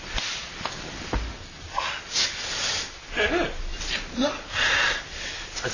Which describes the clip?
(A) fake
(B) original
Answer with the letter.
B